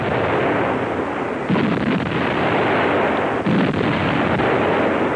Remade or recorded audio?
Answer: recorded